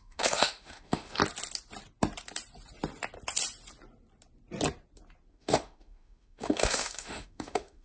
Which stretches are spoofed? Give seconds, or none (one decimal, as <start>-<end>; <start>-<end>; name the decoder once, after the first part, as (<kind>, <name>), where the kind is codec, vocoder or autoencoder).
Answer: 0.0-1.2 (autoencoder, DAC-VAE); 5.3-7.8